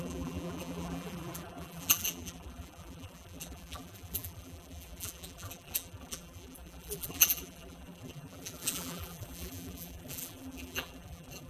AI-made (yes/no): yes